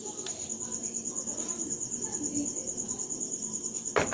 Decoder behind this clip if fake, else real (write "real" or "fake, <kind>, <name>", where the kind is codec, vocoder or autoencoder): real